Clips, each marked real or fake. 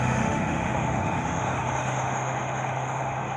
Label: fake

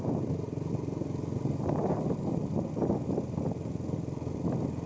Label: real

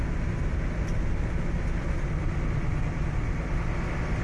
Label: real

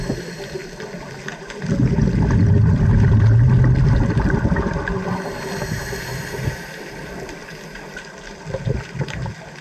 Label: real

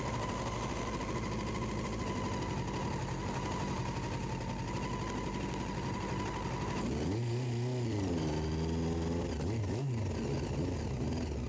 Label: real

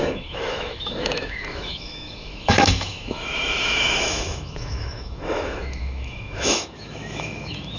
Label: fake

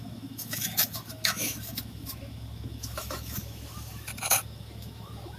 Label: fake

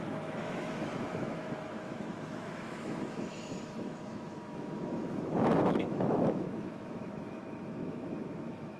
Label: fake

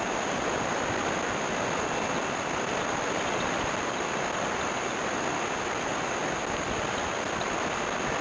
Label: real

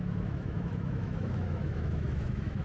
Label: fake